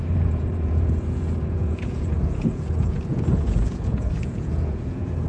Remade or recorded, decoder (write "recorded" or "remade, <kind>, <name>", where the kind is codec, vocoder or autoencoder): remade, vocoder, Vocos